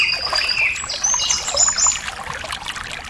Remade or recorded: recorded